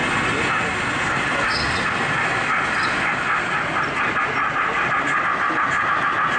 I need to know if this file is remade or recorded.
recorded